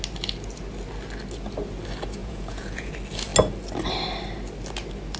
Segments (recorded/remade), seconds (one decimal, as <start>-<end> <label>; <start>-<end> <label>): 0.0-2.2 recorded; 2.2-2.9 remade; 2.9-5.2 recorded